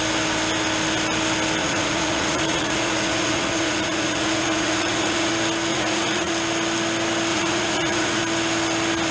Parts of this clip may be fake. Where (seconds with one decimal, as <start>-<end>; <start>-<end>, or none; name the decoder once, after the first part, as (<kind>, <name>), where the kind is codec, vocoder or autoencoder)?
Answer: 1.6-5.3 (vocoder, Vocos); 5.7-6.3; 7.3-8.2